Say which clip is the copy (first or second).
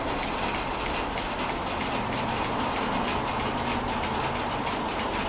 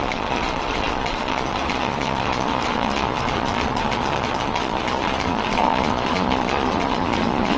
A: second